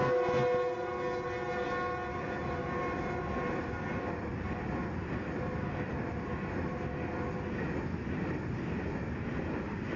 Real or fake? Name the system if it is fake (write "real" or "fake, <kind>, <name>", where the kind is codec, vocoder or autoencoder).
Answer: real